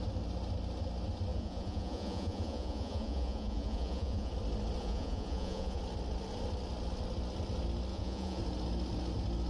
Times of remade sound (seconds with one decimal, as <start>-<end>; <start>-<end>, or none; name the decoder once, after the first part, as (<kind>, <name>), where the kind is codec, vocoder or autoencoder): 1.3-4.3 (vocoder, Vocos); 4.8-5.8; 7.9-8.4